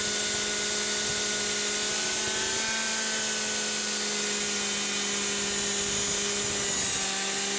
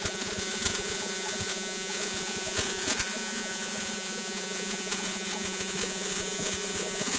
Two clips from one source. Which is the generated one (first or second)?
second